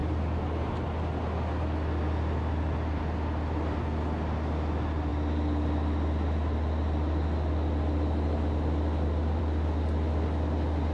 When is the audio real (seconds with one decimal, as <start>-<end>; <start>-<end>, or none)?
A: 0.0-10.9